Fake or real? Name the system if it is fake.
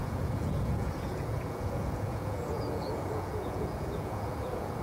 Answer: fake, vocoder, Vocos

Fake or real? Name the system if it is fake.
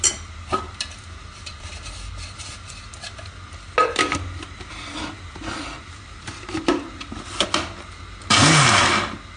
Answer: real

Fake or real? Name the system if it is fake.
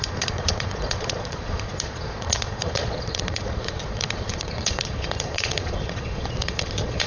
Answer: fake, vocoder, Vocos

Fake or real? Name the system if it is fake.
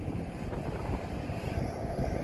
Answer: real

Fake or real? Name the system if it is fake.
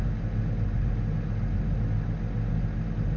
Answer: real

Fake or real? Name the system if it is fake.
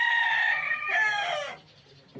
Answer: real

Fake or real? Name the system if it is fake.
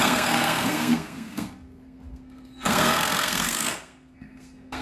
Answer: fake, codec, SNAC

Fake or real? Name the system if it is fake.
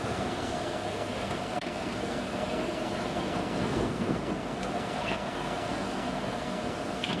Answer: fake, codec, SNAC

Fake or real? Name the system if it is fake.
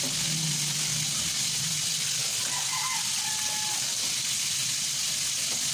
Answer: real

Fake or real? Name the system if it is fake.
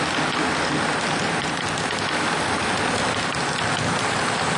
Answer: real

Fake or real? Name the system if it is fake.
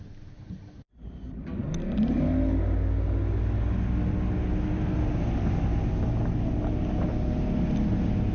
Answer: real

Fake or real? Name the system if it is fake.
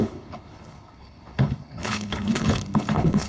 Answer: fake, codec, HILCodec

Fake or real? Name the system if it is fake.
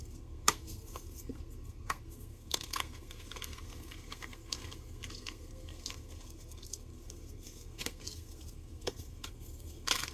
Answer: fake, codec, SNAC